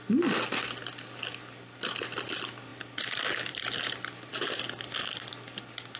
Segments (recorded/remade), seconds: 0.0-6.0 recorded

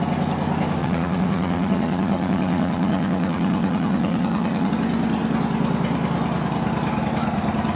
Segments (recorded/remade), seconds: 0.0-0.8 recorded; 0.8-4.7 remade; 4.7-7.8 recorded

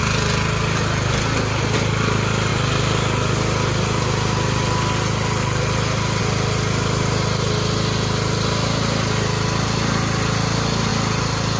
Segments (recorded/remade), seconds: 0.0-11.6 recorded

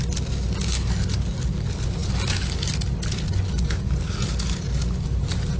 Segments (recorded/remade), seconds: 0.0-5.6 recorded

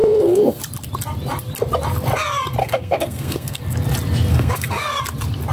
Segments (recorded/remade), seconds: 0.0-0.6 remade; 0.6-2.6 recorded; 2.6-3.6 remade; 3.6-4.3 recorded; 4.3-5.0 remade; 5.0-5.5 recorded

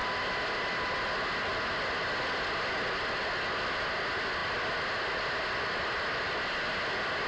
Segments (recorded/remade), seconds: 0.0-7.3 recorded

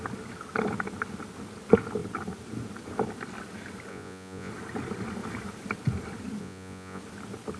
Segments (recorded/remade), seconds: 0.0-3.9 recorded; 3.9-4.5 remade; 4.5-6.4 recorded; 6.4-7.0 remade; 7.0-7.6 recorded

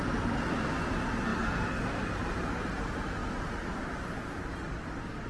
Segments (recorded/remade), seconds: 0.0-5.3 recorded